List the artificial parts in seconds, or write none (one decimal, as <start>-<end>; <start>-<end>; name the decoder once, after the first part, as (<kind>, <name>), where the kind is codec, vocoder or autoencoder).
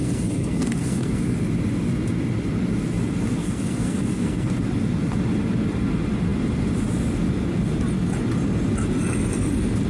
0.0-1.5 (codec, SNAC); 3.4-4.5